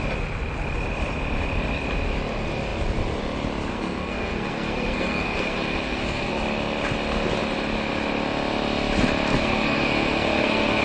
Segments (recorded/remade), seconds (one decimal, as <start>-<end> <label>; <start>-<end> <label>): 0.0-3.7 recorded; 3.7-6.3 remade; 6.3-9.3 recorded; 9.3-10.8 remade